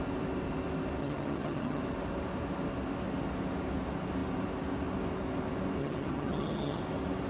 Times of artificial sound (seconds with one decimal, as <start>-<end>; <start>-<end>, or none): 1.0-1.8; 5.8-6.8